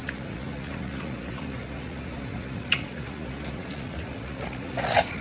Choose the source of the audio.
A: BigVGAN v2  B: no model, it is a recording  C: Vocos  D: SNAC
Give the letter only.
C